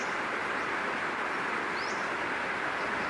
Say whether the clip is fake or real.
real